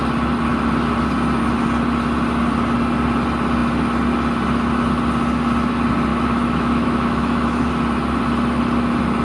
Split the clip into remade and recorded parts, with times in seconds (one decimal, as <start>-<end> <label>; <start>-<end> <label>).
0.0-6.1 recorded; 6.1-7.7 remade; 7.7-9.2 recorded